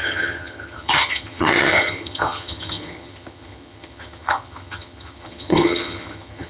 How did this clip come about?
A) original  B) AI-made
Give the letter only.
B